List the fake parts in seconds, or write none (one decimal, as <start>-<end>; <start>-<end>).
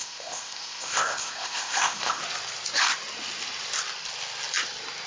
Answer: 0.0-2.2